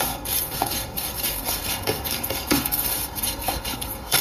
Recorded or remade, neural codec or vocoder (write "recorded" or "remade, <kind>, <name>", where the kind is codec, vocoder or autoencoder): remade, codec, SNAC